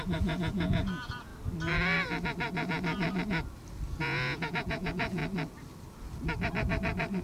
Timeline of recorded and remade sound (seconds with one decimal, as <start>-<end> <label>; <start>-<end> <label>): 0.0-1.3 remade; 1.3-4.0 recorded; 4.0-5.2 remade; 5.2-7.2 recorded